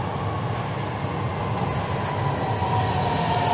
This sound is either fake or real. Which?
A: real